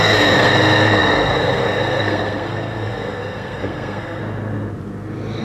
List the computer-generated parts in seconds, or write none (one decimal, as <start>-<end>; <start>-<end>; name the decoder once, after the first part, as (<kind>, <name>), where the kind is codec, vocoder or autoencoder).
0.0-4.2 (codec, SNAC)

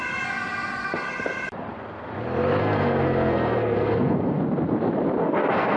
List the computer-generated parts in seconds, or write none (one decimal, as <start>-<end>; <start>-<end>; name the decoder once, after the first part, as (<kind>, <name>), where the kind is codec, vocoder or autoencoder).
2.6-4.4 (codec, SNAC); 5.2-5.8